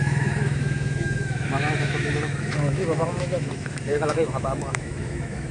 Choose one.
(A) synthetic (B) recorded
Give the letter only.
A